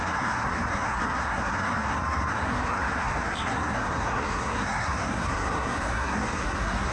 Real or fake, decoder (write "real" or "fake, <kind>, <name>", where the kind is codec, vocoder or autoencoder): fake, codec, SNAC